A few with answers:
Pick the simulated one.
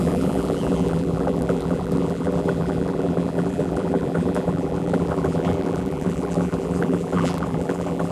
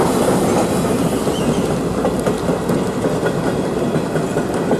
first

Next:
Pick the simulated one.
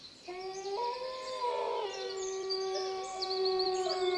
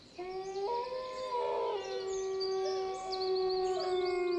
first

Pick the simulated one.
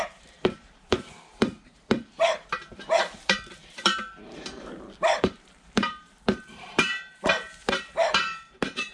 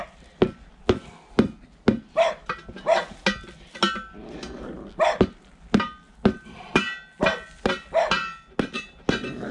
first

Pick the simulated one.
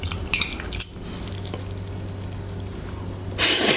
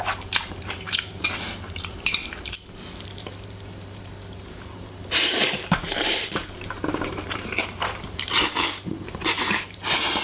second